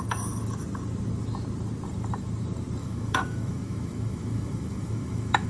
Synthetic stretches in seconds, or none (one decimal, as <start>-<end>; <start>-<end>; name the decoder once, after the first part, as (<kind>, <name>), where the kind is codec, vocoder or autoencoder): 2.8-5.5 (autoencoder, DAC-VAE)